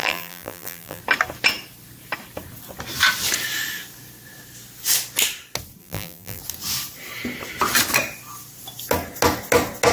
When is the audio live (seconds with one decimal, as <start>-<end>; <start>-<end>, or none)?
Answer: 1.0-5.8; 6.4-9.9